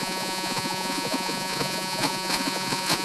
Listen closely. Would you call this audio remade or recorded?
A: remade